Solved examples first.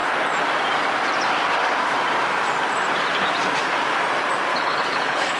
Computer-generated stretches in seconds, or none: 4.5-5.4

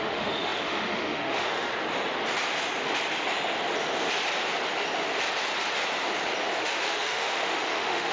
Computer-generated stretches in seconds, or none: 0.0-1.7; 6.6-8.1

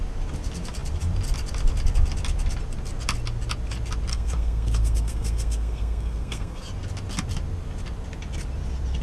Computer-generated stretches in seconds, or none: 4.1-6.7

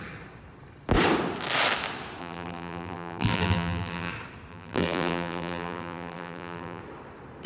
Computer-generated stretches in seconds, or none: 2.2-4.1; 4.5-6.8

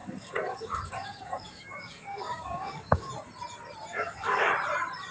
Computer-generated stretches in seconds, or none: 0.0-3.1; 3.9-4.5

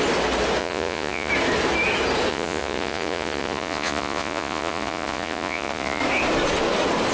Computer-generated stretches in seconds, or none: 0.6-1.3; 2.3-6.0

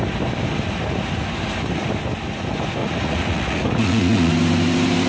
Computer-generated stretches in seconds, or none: 2.8-4.3